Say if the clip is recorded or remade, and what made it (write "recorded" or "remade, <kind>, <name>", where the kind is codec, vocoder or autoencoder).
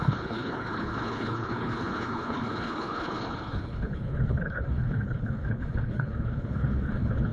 remade, codec, HILCodec